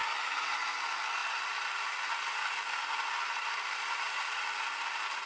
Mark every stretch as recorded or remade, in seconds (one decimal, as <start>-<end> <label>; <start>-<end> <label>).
0.0-1.2 recorded; 1.2-4.4 remade; 4.4-5.3 recorded